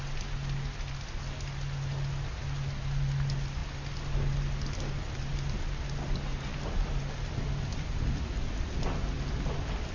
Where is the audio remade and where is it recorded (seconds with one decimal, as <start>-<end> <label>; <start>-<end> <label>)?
0.0-9.9 recorded